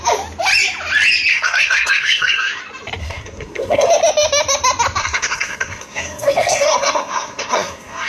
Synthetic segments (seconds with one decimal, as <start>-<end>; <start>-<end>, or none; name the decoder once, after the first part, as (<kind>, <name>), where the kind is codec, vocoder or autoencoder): 1.3-2.6 (codec, SNAC); 3.0-3.9; 5.0-8.1